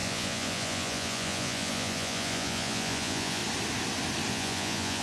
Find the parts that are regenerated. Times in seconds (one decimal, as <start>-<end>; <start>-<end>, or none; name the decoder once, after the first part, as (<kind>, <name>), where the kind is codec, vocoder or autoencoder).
0.0-3.4 (vocoder, Vocos); 4.3-5.0